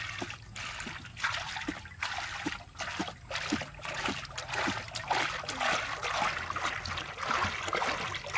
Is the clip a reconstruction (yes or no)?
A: no